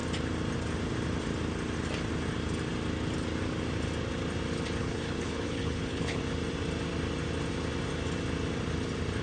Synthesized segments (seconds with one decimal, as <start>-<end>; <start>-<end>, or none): 4.8-6.2